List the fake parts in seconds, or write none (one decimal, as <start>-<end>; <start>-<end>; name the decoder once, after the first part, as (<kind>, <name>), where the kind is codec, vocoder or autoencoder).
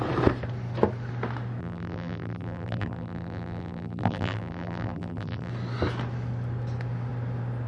1.6-5.5 (vocoder, BigVGAN v2)